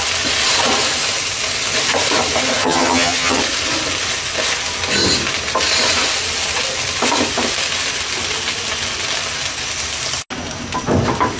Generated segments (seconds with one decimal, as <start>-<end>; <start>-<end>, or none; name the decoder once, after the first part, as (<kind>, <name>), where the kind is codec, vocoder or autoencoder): 2.6-3.4 (vocoder, HiFi-GAN)